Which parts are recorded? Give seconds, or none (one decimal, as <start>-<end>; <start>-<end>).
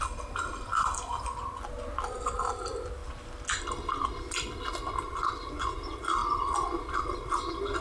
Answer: 0.0-7.8